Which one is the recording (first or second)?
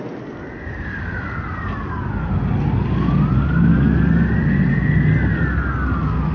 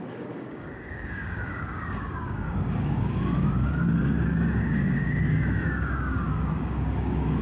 first